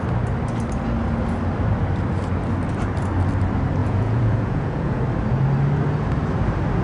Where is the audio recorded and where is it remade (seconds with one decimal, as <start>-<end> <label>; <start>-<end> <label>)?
0.0-3.8 recorded; 3.8-5.0 remade; 5.0-6.8 recorded